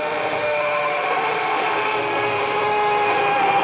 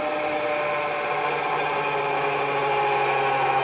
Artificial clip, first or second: first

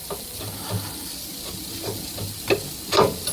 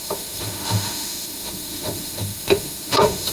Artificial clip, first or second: second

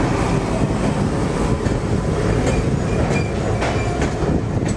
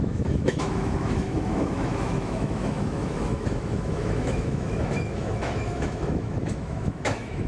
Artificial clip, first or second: second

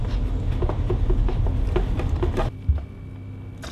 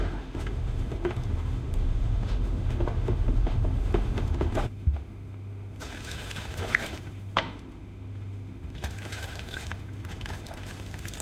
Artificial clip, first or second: second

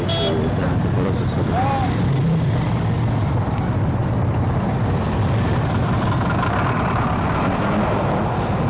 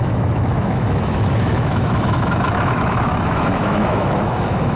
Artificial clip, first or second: second